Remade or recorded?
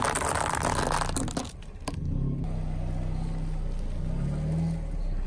recorded